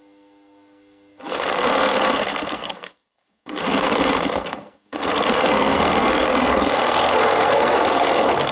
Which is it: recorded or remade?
remade